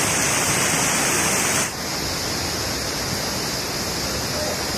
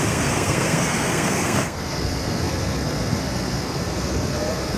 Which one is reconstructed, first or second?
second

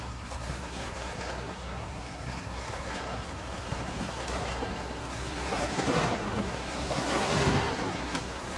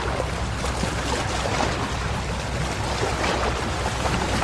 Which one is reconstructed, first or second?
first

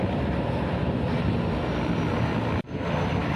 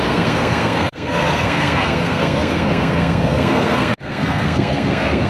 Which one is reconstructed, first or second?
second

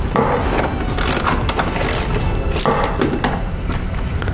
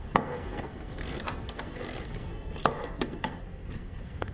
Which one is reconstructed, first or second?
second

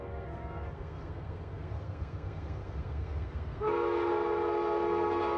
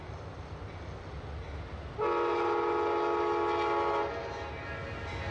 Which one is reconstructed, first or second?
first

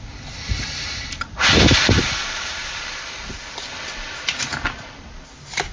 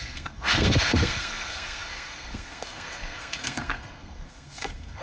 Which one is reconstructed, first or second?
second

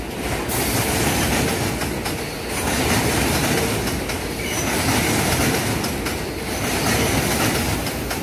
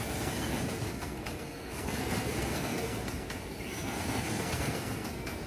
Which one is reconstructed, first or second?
second